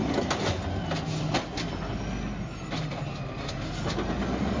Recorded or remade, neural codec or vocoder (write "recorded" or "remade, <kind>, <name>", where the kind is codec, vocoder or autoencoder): recorded